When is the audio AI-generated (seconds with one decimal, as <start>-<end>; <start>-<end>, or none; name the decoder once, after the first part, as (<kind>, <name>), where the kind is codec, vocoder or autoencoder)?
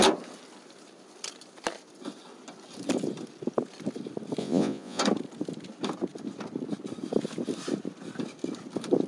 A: 4.4-5.0 (vocoder, Vocos)